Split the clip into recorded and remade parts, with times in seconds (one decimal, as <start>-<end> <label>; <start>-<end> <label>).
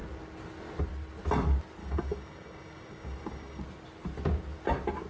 0.0-1.8 recorded; 1.8-3.6 remade; 3.6-5.1 recorded